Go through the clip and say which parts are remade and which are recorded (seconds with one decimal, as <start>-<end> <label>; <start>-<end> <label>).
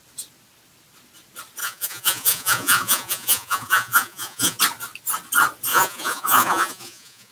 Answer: 0.0-1.6 recorded; 1.6-4.6 remade; 4.6-5.7 recorded; 5.7-7.3 remade